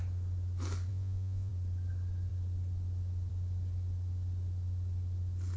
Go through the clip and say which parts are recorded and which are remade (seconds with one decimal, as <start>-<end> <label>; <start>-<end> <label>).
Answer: 0.0-0.9 recorded; 0.9-1.5 remade; 1.5-5.6 recorded

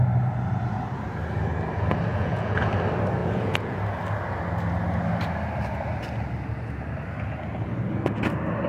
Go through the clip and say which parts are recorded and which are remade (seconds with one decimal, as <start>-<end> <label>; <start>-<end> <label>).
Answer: 0.0-2.1 recorded; 2.1-2.7 remade; 2.7-3.2 recorded; 3.2-3.8 remade; 3.8-8.7 recorded

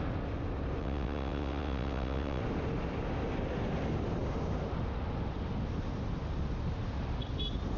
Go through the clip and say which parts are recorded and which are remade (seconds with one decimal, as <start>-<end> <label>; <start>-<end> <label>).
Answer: 0.0-0.8 recorded; 0.8-2.4 remade; 2.4-7.8 recorded

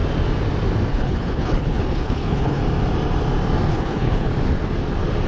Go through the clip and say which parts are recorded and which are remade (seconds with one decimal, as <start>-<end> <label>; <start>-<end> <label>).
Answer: 0.0-0.9 recorded; 0.9-2.6 remade; 2.6-3.7 recorded; 3.7-4.3 remade; 4.3-5.3 recorded